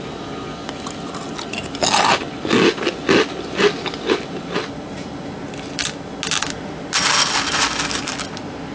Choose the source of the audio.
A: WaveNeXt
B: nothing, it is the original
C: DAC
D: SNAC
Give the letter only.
B